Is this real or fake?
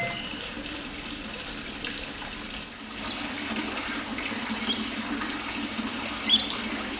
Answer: real